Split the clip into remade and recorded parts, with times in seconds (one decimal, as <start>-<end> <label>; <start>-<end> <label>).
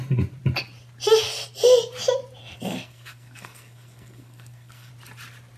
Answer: 0.0-2.4 recorded; 2.4-4.9 remade; 4.9-5.6 recorded